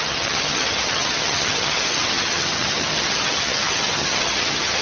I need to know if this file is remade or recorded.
remade